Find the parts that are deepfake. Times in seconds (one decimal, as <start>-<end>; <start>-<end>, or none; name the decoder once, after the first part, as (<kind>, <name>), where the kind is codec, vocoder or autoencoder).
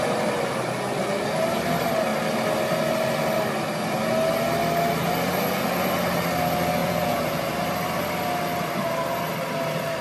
6.8-7.5 (vocoder, Vocos)